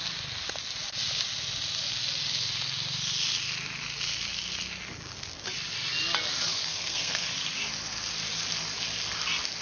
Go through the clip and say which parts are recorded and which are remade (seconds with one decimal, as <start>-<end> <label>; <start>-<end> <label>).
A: 0.0-6.7 recorded; 6.7-7.3 remade; 7.3-9.6 recorded

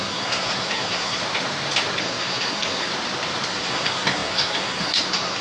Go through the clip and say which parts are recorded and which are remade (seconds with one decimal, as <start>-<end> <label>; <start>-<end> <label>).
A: 0.0-1.2 remade; 1.2-2.0 recorded; 2.0-2.9 remade; 2.9-3.5 recorded; 3.5-5.4 remade

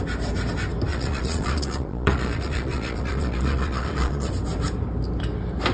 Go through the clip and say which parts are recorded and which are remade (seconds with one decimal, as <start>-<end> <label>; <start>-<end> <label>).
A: 0.0-0.9 recorded; 0.9-4.3 remade; 4.3-5.7 recorded

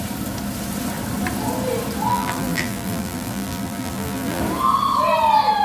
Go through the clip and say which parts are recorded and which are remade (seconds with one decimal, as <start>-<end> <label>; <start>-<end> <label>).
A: 0.0-2.1 recorded; 2.1-4.4 remade; 4.4-5.6 recorded

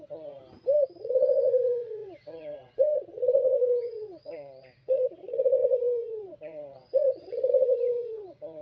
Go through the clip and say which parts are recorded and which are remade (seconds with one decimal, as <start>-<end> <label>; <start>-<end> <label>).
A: 0.0-0.4 remade; 0.4-1.0 recorded; 1.0-8.6 remade

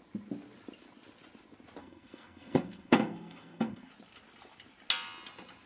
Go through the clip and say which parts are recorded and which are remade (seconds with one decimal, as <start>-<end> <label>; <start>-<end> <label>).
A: 0.0-1.8 recorded; 1.8-3.9 remade; 3.9-5.7 recorded

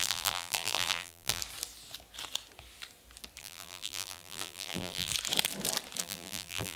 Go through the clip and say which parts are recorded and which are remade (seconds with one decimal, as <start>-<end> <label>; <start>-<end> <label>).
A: 0.0-1.4 remade; 1.4-3.4 recorded; 3.4-5.1 remade; 5.1-6.0 recorded; 6.0-6.8 remade